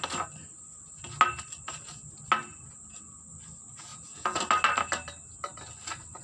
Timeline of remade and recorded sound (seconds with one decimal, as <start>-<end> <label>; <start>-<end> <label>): 0.0-3.9 recorded; 3.9-4.4 remade; 4.4-6.2 recorded